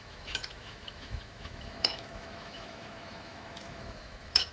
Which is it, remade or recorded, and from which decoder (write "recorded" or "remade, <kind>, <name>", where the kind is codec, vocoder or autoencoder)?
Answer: remade, autoencoder, DAC-VAE